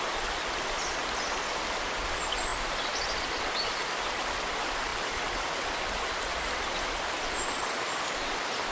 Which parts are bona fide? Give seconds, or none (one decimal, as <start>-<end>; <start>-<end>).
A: 0.0-8.7